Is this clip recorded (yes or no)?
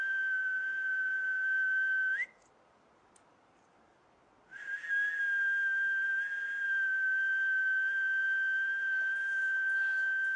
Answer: yes